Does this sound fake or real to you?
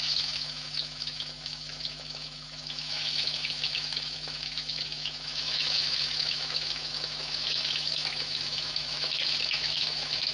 fake